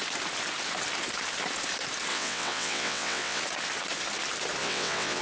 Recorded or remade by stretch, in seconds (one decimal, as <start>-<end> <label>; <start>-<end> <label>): 0.0-2.1 recorded; 2.1-3.4 remade; 3.4-4.6 recorded; 4.6-5.2 remade